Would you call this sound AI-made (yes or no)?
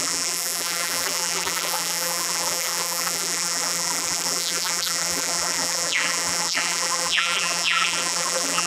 yes